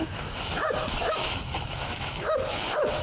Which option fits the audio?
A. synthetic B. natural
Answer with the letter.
A